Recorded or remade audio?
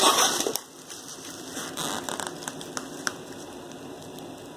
recorded